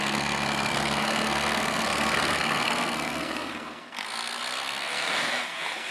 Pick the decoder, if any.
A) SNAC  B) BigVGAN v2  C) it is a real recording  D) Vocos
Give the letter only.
A